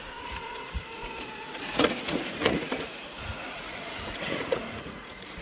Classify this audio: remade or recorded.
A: remade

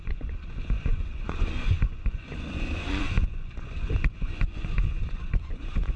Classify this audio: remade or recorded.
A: remade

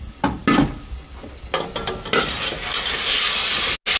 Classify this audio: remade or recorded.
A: recorded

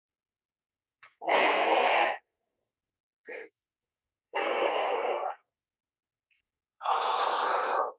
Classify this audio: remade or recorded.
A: remade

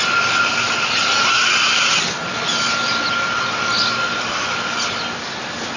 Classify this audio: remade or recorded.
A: recorded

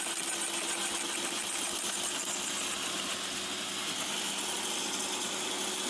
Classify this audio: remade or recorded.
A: recorded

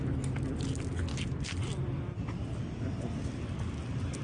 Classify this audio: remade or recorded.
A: recorded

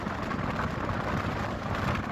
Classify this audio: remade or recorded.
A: recorded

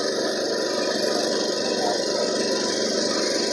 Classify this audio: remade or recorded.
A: recorded